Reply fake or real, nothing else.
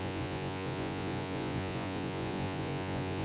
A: fake